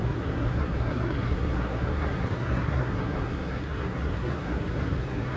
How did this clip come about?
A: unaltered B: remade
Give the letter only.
B